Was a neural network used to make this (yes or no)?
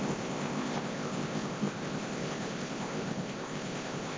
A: yes